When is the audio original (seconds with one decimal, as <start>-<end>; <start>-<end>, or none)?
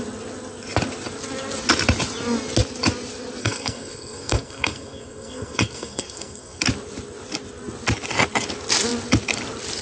0.0-3.4; 6.6-9.8